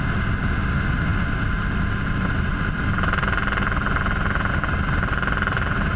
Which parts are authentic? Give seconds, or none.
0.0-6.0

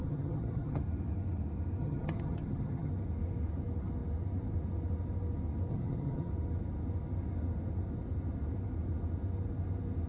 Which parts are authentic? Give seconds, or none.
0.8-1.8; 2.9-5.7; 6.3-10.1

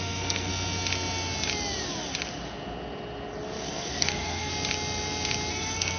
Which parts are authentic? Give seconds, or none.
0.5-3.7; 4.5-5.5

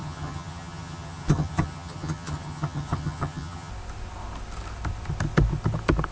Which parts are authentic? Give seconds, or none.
3.7-6.1

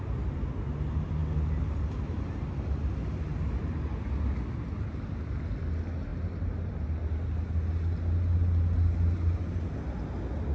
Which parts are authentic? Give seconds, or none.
0.0-10.5

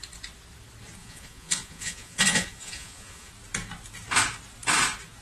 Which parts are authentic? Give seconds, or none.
0.0-1.0; 3.3-5.2

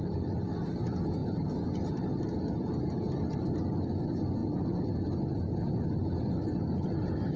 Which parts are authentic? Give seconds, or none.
0.0-7.4

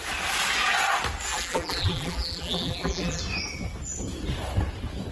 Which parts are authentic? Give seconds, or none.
0.0-1.3; 3.2-5.1